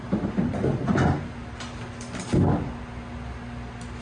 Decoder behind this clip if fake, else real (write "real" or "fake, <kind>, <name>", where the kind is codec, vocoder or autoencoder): real